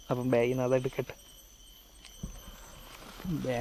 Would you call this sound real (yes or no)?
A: yes